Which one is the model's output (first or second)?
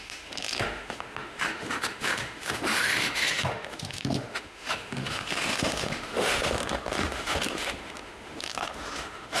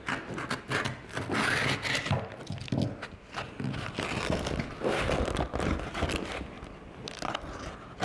first